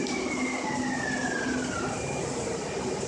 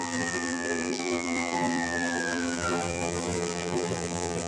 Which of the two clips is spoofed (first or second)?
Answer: second